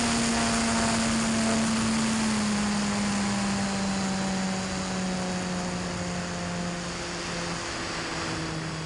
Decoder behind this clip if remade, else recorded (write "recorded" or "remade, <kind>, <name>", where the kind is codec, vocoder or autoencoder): recorded